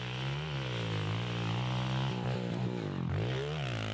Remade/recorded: recorded